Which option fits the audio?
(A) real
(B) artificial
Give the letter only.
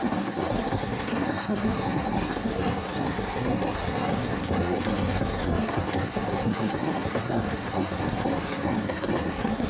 B